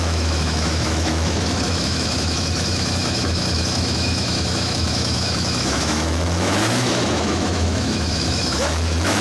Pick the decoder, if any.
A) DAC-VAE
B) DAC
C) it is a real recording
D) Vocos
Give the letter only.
A